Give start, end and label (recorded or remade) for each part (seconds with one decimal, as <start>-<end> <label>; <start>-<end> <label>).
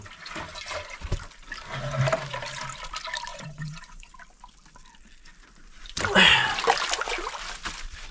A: 0.0-3.3 recorded; 3.3-4.1 remade; 4.1-8.1 recorded